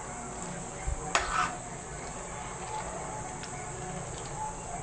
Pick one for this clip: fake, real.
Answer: real